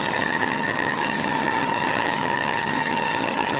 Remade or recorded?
remade